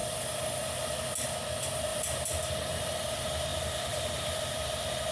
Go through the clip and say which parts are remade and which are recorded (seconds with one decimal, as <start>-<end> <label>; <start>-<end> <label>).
0.0-1.9 recorded; 1.9-2.8 remade; 2.8-3.5 recorded; 3.5-4.4 remade; 4.4-5.1 recorded